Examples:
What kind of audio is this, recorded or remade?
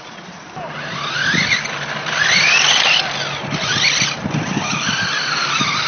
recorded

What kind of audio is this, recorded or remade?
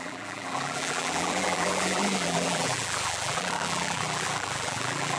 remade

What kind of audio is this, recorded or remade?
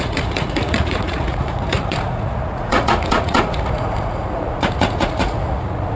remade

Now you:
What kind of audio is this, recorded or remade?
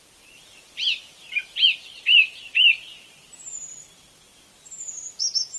recorded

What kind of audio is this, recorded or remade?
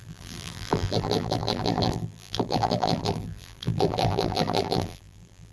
remade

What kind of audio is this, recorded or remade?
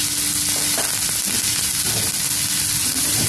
recorded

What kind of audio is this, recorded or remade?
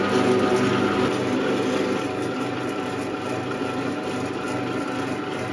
recorded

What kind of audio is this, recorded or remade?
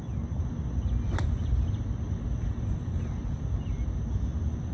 recorded